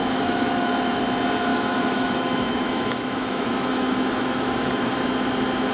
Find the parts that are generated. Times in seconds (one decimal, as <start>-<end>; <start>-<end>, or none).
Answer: 0.0-1.0; 1.5-4.9